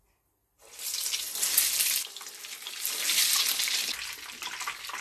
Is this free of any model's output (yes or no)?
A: yes